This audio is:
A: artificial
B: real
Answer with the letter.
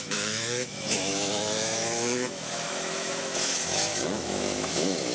A